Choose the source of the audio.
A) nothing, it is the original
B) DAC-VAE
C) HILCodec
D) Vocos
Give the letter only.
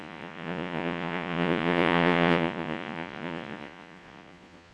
D